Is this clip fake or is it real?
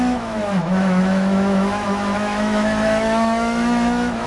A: fake